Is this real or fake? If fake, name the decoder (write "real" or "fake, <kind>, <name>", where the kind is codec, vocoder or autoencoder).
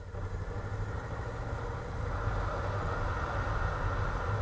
real